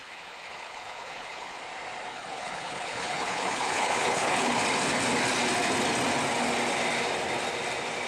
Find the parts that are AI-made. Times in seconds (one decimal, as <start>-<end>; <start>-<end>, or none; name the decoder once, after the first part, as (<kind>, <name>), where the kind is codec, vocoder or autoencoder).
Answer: 0.0-1.6 (codec, HILCodec); 2.1-4.6